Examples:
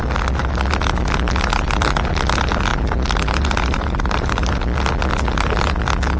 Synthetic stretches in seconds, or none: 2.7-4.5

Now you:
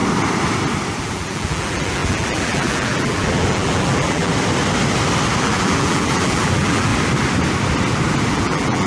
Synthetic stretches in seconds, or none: 1.0-4.3; 5.4-6.9; 8.3-8.9

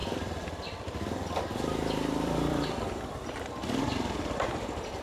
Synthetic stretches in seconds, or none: 0.0-3.0

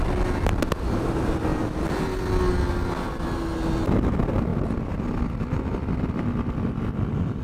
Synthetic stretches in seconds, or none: 1.5-2.5; 4.5-5.0